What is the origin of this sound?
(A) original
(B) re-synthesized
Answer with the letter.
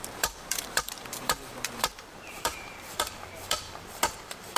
B